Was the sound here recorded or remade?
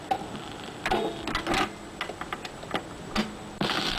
recorded